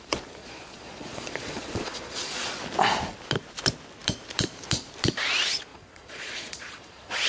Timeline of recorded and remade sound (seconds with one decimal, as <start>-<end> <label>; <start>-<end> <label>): 0.0-0.4 recorded; 0.4-2.6 remade; 2.6-5.7 recorded; 5.7-7.3 remade